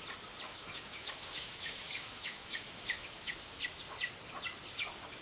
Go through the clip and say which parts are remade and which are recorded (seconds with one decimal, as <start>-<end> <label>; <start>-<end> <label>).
0.0-0.5 recorded; 0.5-3.6 remade; 3.6-5.2 recorded